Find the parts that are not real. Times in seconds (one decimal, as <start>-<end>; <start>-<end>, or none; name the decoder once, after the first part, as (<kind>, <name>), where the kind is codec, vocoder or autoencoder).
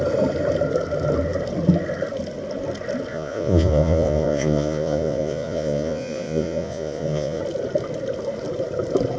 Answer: 3.1-7.4 (vocoder, Vocos)